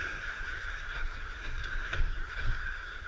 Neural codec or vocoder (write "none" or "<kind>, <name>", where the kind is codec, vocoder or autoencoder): codec, SNAC